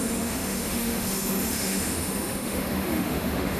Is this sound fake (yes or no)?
yes